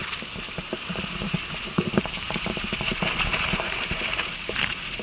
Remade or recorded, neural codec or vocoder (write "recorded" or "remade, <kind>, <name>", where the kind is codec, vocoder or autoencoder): remade, vocoder, BigVGAN v2